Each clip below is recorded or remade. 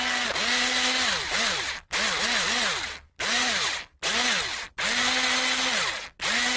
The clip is recorded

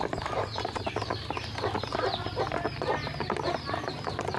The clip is recorded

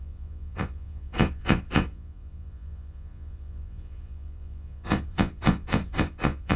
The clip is remade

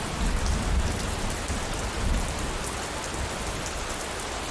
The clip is recorded